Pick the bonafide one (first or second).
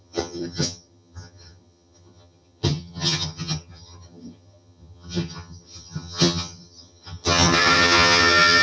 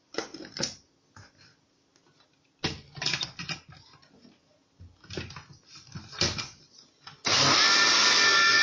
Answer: second